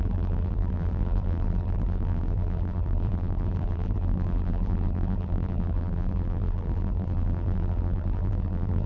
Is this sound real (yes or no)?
no